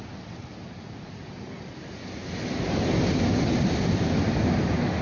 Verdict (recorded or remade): recorded